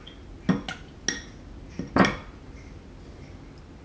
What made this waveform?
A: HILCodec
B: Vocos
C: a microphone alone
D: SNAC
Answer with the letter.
C